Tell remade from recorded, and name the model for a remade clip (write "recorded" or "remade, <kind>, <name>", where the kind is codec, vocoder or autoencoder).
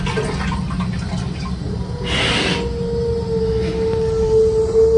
recorded